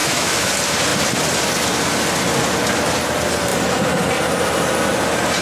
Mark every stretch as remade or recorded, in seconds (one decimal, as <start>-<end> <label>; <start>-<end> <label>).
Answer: 0.0-0.5 remade; 0.5-5.4 recorded